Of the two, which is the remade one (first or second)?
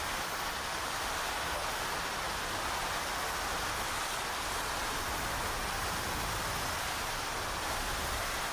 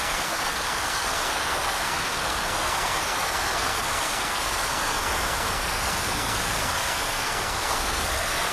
second